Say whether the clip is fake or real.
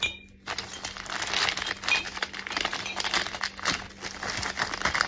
real